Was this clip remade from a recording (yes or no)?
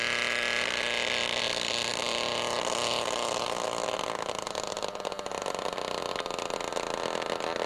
no